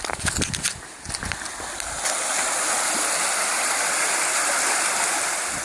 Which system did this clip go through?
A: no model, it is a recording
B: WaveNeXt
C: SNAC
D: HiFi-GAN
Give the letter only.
A